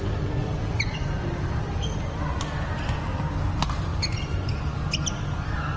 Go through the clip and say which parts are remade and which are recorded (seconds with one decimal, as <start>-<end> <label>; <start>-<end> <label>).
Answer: 0.0-0.4 recorded; 0.4-2.0 remade; 2.0-5.8 recorded